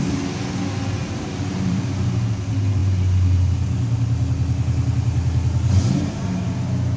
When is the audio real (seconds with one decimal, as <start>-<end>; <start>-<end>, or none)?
0.0-1.0; 1.9-7.0